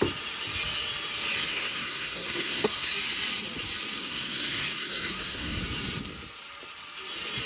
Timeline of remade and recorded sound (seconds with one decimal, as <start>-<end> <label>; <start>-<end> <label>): 0.0-1.5 recorded; 1.5-2.9 remade; 2.9-4.1 recorded; 4.1-5.6 remade; 5.6-7.5 recorded